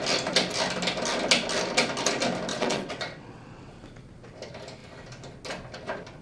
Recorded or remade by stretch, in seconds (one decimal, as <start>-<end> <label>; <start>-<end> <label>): 0.0-2.5 recorded; 2.5-3.7 remade; 3.7-6.2 recorded